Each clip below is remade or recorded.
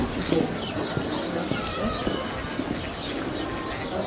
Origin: recorded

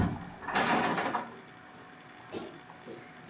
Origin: recorded